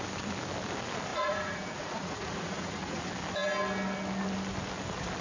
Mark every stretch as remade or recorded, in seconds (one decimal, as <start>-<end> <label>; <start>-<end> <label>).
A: 0.0-1.1 recorded; 1.1-3.0 remade; 3.0-5.2 recorded